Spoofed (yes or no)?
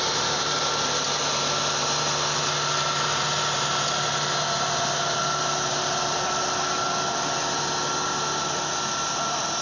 no